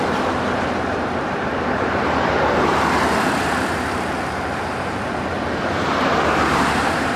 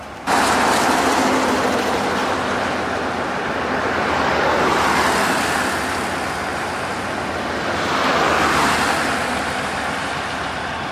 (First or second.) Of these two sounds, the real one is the second